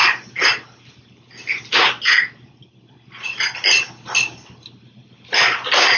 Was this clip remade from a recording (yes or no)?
no